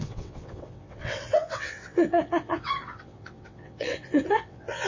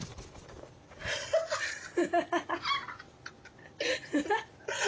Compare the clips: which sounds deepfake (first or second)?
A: first